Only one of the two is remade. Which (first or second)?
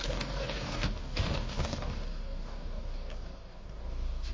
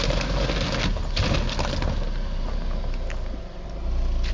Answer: first